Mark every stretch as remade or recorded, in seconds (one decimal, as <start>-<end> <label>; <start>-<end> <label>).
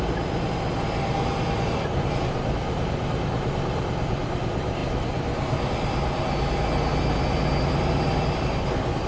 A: 0.0-9.1 recorded